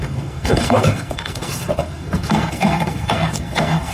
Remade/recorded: remade